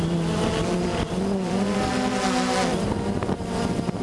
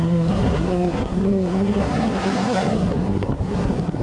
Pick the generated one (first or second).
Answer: second